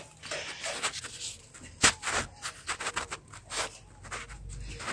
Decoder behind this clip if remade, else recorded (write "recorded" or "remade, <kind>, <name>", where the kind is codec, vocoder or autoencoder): recorded